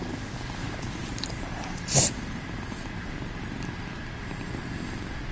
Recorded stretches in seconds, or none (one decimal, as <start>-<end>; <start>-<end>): 0.0-0.6; 2.9-5.3